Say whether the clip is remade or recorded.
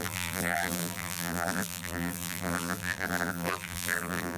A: remade